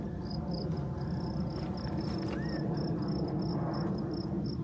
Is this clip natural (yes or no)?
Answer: yes